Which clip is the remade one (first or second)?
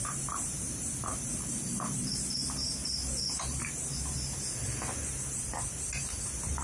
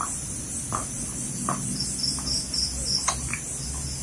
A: first